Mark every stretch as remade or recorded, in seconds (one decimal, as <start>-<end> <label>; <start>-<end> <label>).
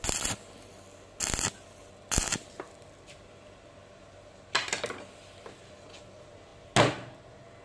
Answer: 0.0-7.6 recorded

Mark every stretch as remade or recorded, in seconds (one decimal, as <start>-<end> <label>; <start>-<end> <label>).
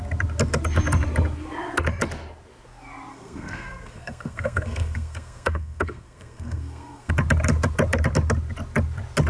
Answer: 0.0-3.1 recorded; 3.1-7.1 remade; 7.1-9.3 recorded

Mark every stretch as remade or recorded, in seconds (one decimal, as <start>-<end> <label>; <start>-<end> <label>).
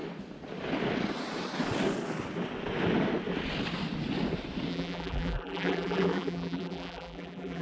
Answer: 0.0-4.7 recorded; 4.7-7.6 remade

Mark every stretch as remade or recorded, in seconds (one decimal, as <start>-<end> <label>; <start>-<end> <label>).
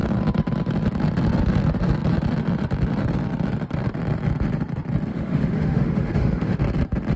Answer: 0.0-5.1 recorded; 5.1-6.6 remade; 6.6-7.2 recorded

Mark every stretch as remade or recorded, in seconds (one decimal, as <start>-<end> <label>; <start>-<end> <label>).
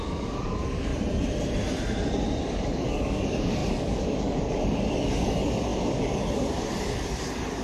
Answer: 0.0-0.9 remade; 0.9-2.4 recorded; 2.4-7.6 remade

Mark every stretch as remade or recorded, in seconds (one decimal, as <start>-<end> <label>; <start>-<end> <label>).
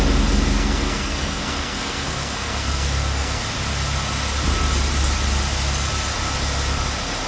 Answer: 0.0-0.5 recorded; 0.5-3.5 remade; 3.5-7.3 recorded